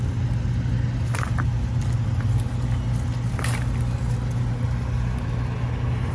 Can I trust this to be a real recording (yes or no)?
yes